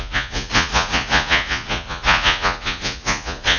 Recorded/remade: remade